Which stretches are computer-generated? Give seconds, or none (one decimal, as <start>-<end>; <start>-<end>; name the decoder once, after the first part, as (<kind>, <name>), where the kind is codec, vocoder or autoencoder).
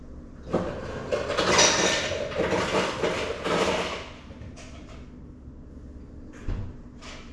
none